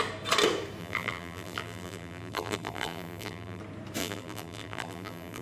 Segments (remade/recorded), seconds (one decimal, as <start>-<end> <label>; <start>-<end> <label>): 0.0-0.8 recorded; 0.8-3.6 remade; 3.6-4.0 recorded; 4.0-5.4 remade